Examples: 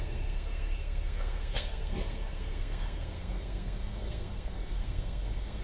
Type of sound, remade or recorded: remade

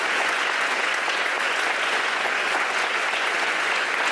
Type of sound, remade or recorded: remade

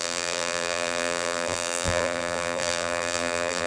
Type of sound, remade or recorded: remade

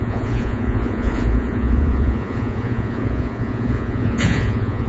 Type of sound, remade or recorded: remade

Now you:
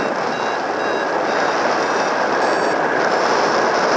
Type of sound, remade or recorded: recorded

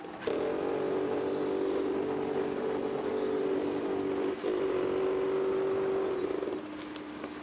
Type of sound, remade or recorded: recorded